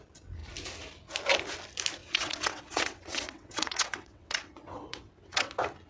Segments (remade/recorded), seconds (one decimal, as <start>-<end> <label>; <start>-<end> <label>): 0.0-2.0 recorded; 2.0-5.5 remade; 5.5-5.9 recorded